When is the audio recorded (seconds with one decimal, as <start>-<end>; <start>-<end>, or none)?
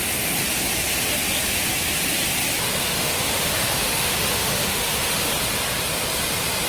0.0-2.8; 5.3-6.7